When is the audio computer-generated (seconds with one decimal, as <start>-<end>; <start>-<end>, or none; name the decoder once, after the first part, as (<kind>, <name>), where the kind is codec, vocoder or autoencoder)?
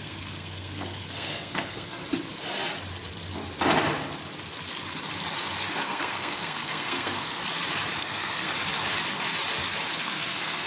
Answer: 0.0-2.0 (codec, SNAC); 5.7-7.4; 8.0-8.5; 9.9-10.7